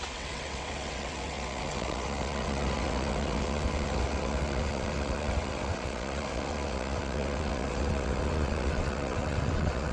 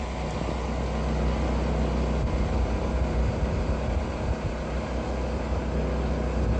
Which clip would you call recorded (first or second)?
second